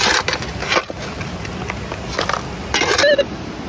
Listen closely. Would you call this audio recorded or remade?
recorded